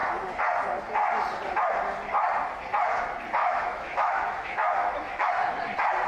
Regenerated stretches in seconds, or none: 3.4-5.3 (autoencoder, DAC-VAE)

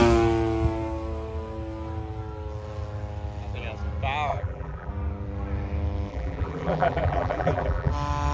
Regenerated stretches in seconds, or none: 4.3-4.9 (vocoder, BigVGAN v2); 6.1-7.9

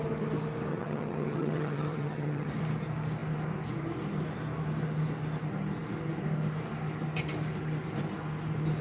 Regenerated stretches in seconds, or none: 0.7-2.5 (vocoder, HiFi-GAN)

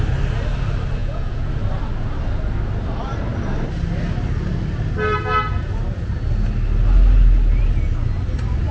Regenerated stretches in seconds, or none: 1.0-1.5 (vocoder, Vocos)

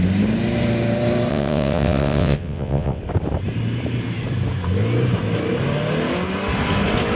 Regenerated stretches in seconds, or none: 1.3-3.0 (vocoder, WaveNeXt)

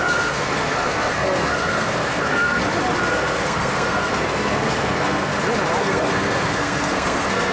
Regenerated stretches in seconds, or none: 0.0-2.6 (codec, SNAC); 3.1-5.3; 5.8-7.5

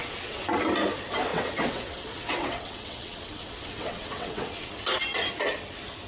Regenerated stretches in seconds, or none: 0.0-0.5 (vocoder, WaveNeXt); 1.3-4.7

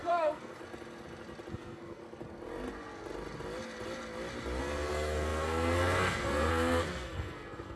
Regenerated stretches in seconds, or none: 0.0-0.6 (codec, SNAC); 1.5-2.0; 4.6-7.8